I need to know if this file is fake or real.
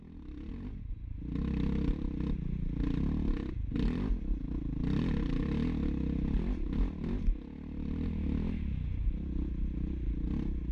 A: real